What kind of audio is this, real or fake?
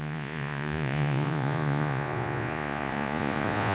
fake